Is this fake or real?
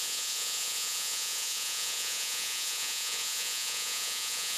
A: fake